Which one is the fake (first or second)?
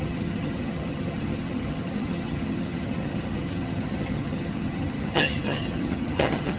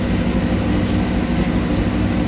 first